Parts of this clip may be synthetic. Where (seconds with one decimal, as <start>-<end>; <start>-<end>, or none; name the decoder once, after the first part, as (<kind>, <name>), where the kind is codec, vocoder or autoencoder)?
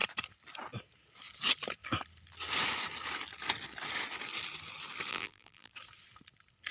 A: 5.1-5.7 (vocoder, BigVGAN v2)